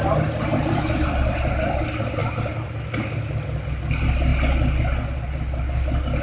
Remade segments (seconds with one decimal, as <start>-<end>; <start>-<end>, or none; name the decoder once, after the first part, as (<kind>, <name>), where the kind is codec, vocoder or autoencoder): none